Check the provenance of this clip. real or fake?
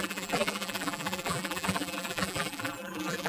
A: fake